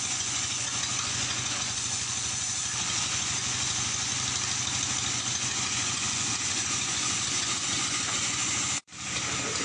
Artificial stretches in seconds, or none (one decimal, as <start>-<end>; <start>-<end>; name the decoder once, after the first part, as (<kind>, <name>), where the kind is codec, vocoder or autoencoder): 0.0-4.1 (vocoder, Vocos); 5.2-8.9